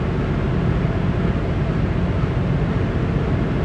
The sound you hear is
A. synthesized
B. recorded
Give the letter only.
B